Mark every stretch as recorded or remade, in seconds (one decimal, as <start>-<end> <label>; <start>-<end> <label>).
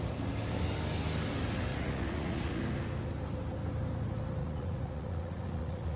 0.0-1.7 recorded; 1.7-2.6 remade; 2.6-4.4 recorded; 4.4-6.0 remade